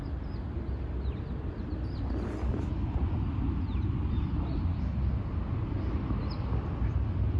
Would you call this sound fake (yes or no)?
no